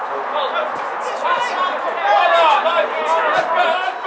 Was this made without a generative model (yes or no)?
yes